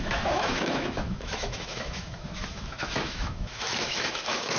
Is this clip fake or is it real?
fake